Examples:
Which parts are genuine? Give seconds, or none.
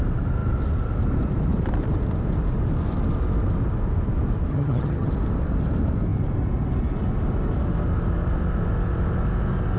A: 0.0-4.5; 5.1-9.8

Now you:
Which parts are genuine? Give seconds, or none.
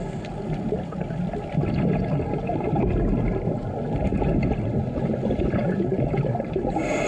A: 0.0-7.1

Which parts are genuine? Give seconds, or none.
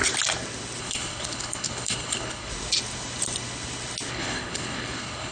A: 0.0-0.8; 2.5-4.1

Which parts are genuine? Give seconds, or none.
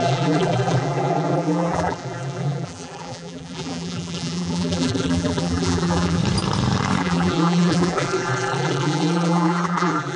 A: 6.2-7.0